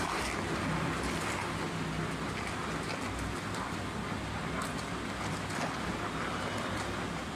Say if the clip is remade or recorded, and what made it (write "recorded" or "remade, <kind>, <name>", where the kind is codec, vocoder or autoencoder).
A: recorded